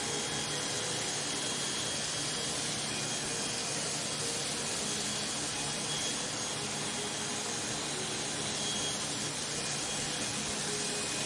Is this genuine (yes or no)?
yes